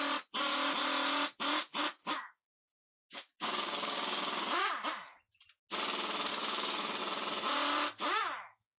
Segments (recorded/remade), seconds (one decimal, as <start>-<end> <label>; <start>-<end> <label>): 0.0-2.0 recorded; 2.0-2.6 remade; 2.6-3.0 recorded; 3.0-4.5 remade; 4.5-6.3 recorded; 6.3-7.0 remade; 7.0-8.8 recorded